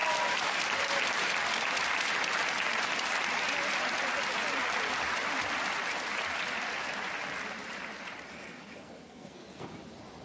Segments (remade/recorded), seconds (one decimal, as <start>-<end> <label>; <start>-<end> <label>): 0.0-8.3 recorded; 8.3-9.7 remade; 9.7-10.2 recorded

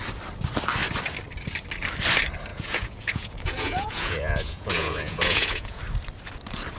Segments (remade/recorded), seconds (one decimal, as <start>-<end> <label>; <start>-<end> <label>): 0.0-2.5 recorded; 2.5-5.8 remade; 5.8-6.8 recorded

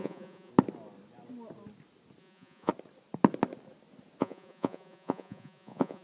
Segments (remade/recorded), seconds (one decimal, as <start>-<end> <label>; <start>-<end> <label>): 0.0-0.5 remade; 0.5-2.2 recorded; 2.2-2.7 remade; 2.7-4.2 recorded; 4.2-6.0 remade

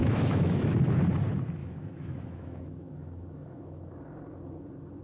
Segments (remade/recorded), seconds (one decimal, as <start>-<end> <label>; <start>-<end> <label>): 0.0-0.7 remade; 0.7-1.6 recorded; 1.6-3.8 remade; 3.8-5.0 recorded

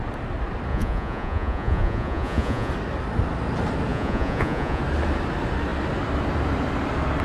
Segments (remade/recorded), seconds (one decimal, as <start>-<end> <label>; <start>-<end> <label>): 0.0-0.7 recorded; 0.7-2.7 remade; 2.7-3.9 recorded; 3.9-4.8 remade; 4.8-7.2 recorded